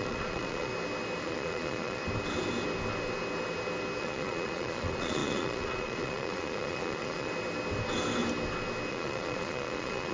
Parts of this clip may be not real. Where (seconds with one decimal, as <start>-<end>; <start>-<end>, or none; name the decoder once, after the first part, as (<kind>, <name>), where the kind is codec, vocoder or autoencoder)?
0.0-0.7 (vocoder, Vocos); 1.2-2.0; 4.0-7.3; 8.9-10.1